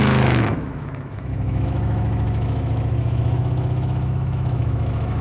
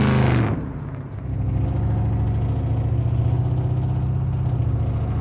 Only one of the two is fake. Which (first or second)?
first